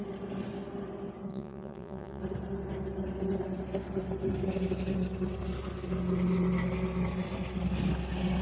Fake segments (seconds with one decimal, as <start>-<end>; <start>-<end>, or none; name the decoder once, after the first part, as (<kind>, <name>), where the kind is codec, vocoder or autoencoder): 1.3-2.2 (vocoder, Vocos)